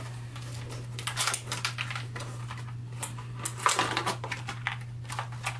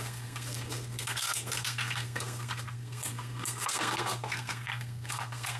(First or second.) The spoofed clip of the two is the second